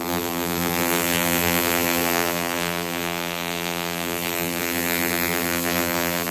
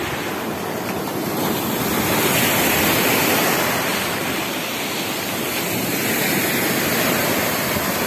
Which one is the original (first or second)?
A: second